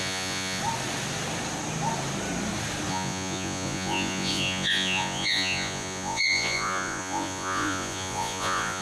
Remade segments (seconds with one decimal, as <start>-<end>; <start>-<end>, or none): 0.0-0.6; 2.9-8.8